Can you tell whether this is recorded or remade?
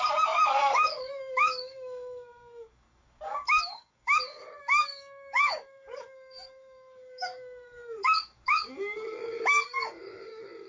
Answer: remade